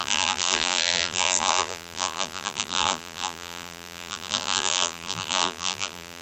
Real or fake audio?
fake